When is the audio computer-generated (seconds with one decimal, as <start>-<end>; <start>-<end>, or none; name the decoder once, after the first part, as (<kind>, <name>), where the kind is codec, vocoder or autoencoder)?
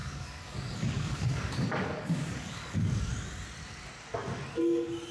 0.0-3.1 (codec, DAC)